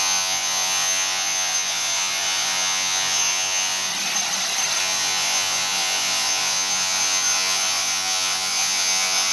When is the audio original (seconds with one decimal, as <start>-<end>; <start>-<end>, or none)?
3.9-4.8